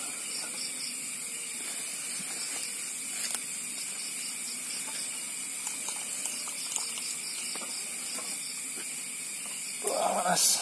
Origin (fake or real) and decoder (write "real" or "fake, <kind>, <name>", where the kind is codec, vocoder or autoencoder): real